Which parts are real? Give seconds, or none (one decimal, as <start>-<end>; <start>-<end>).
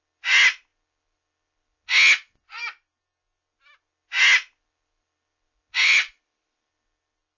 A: 0.0-5.8; 6.7-7.4